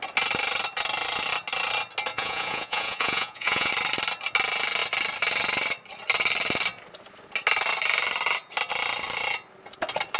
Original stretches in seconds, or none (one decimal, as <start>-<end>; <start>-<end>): 0.0-2.1; 3.7-10.2